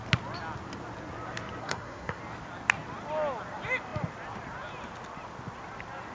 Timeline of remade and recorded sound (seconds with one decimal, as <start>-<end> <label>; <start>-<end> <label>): 0.0-1.6 recorded; 1.6-2.2 remade; 2.2-6.1 recorded